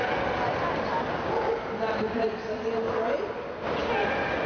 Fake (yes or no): no